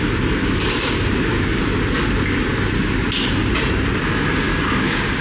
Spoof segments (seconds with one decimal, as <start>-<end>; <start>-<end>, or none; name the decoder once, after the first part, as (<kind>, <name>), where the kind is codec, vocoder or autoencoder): 0.4-1.6 (codec, DAC); 2.5-3.1; 4.5-5.2